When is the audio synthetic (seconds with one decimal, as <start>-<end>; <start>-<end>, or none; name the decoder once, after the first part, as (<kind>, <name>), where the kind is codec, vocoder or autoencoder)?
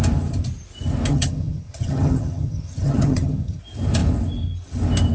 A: 1.1-3.6 (vocoder, HiFi-GAN)